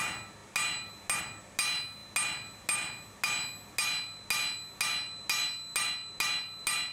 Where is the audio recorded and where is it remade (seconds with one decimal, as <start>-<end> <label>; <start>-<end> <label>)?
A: 0.0-6.9 recorded